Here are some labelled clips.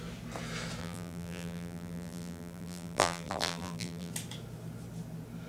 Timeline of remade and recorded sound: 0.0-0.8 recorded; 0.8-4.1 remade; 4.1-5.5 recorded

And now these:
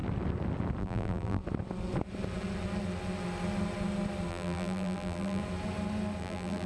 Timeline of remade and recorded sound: 0.0-0.8 recorded; 0.8-1.4 remade; 1.4-4.3 recorded; 4.3-5.4 remade; 5.4-6.2 recorded; 6.2-6.7 remade

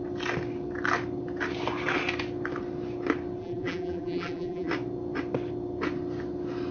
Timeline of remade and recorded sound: 0.0-3.4 recorded; 3.4-4.7 remade; 4.7-6.7 recorded

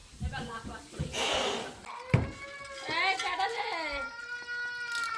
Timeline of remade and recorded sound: 0.0-0.8 remade; 0.8-5.2 recorded